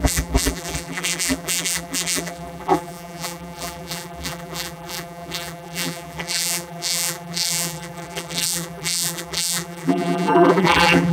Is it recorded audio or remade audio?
remade